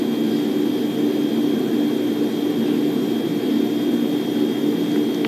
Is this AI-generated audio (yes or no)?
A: no